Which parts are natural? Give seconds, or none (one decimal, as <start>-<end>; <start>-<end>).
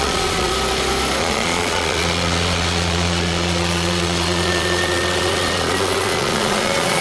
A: 0.5-1.2